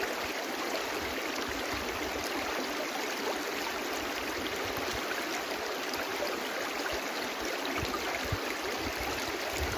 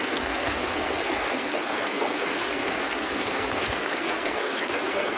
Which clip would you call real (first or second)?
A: first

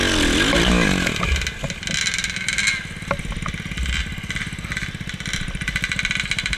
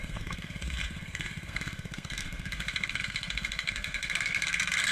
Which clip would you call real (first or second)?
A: first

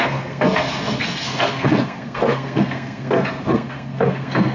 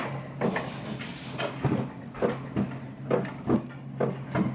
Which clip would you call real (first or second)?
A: second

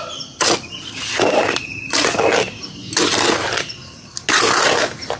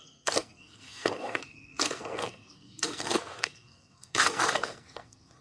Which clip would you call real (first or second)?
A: first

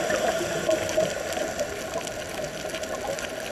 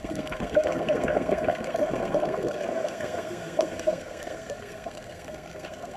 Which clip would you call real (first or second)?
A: first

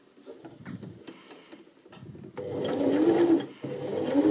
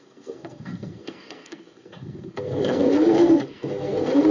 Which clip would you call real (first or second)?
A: first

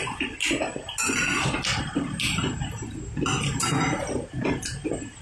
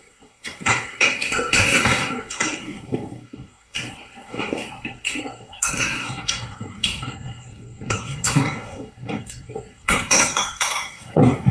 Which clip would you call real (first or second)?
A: first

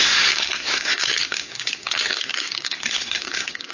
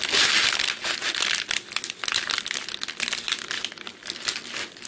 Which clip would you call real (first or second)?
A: second